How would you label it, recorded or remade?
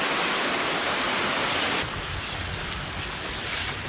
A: recorded